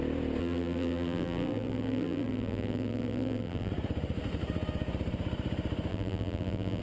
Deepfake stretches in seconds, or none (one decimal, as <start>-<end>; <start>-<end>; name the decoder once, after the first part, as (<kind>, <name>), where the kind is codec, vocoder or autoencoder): 0.4-3.7 (vocoder, BigVGAN v2); 5.9-6.8